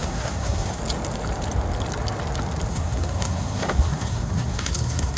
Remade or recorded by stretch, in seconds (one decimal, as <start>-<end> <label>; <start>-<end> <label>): 0.0-0.8 remade; 0.8-2.7 recorded; 2.7-5.2 remade